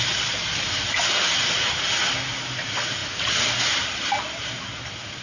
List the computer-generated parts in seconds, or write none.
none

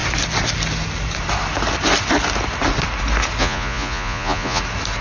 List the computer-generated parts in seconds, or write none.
3.4-4.6 (vocoder, Vocos)

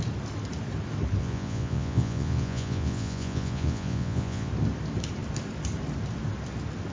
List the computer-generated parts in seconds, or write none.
1.2-4.5 (vocoder, Vocos)

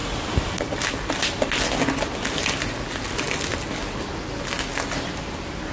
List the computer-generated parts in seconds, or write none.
none